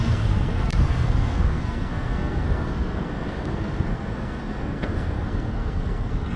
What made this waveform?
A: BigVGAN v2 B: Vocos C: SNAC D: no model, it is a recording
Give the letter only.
C